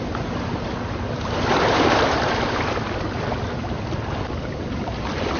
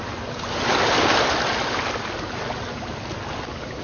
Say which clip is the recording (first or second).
second